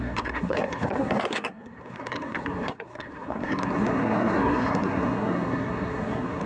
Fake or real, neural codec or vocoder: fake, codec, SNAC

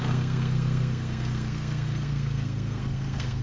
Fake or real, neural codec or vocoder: fake, codec, SNAC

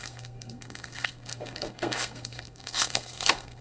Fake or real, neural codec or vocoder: fake, codec, SNAC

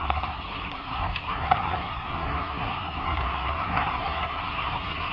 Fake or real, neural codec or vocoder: fake, codec, SNAC